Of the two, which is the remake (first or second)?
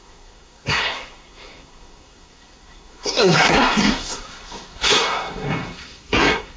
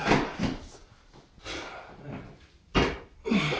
first